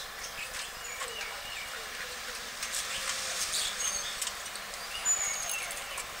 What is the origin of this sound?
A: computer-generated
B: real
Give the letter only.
B